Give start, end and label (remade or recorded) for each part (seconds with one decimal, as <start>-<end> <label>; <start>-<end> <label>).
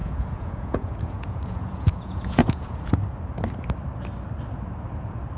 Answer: 0.0-2.9 remade; 2.9-5.4 recorded